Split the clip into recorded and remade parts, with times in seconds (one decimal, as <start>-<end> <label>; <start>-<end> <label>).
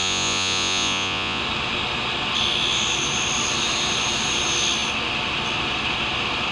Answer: 0.0-1.4 remade; 1.4-6.5 recorded